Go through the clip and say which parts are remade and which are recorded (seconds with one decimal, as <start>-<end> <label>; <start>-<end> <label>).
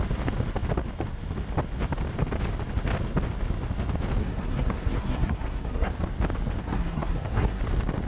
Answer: 0.0-4.2 recorded; 4.2-5.9 remade; 5.9-6.6 recorded; 6.6-7.6 remade; 7.6-8.1 recorded